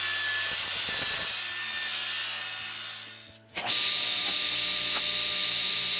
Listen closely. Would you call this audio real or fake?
real